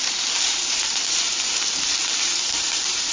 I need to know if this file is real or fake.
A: fake